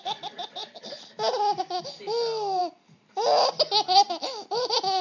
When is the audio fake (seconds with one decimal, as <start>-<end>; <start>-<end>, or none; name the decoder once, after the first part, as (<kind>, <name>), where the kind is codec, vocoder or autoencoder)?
none